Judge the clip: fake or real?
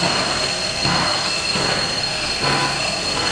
fake